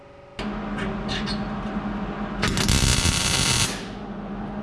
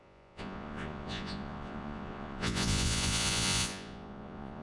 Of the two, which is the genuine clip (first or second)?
first